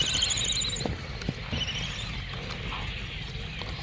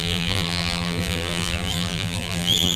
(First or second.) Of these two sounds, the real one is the first